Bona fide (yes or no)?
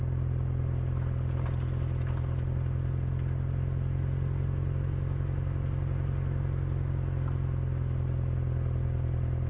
yes